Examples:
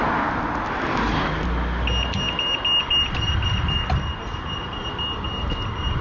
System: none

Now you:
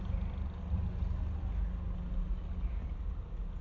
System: none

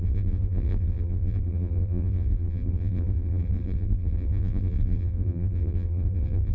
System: vocoder, BigVGAN v2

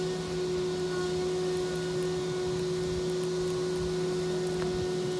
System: none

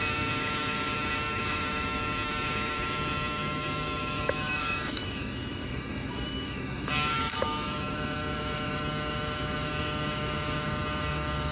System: autoencoder, DAC-VAE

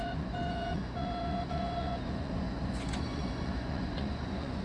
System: vocoder, Vocos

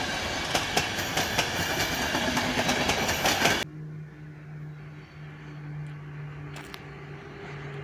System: none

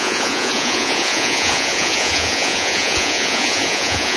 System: vocoder, Vocos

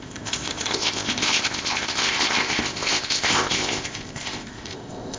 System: codec, ZipCodec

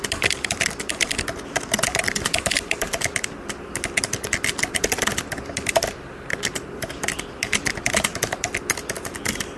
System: none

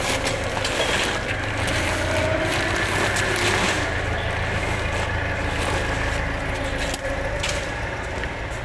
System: none